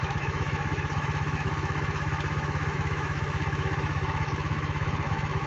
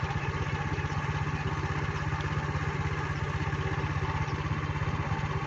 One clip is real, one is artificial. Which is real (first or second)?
second